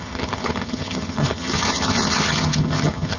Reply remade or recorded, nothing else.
remade